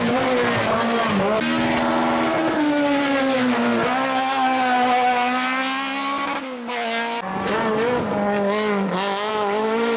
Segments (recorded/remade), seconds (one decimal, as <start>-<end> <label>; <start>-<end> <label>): 0.0-10.0 recorded